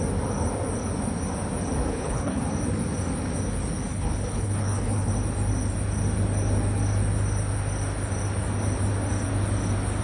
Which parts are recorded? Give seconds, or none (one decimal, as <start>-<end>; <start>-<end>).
0.0-1.9; 2.4-3.9; 5.1-10.0